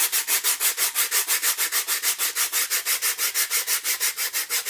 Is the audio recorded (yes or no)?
yes